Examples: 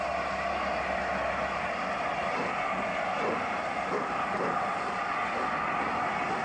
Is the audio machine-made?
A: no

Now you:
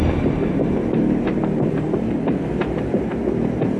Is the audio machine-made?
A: yes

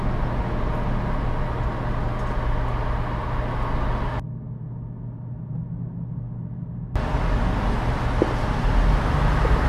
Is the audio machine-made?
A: no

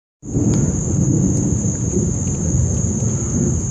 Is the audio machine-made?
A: no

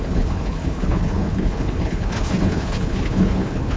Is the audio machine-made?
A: yes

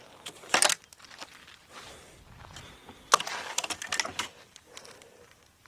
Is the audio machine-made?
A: no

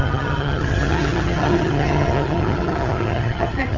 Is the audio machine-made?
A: yes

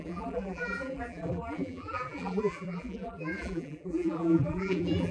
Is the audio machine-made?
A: yes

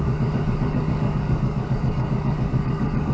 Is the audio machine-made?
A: yes